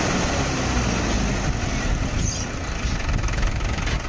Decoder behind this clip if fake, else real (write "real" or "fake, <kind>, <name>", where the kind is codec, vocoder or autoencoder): real